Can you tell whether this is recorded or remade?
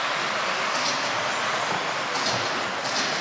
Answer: remade